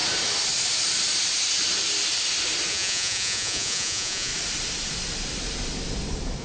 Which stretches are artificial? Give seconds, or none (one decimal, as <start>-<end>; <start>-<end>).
2.7-4.3